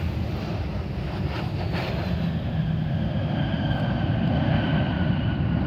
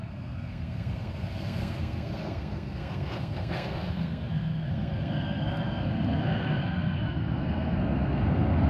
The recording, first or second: first